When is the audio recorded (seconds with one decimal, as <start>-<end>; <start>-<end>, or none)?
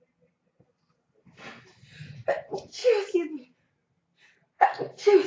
0.0-5.3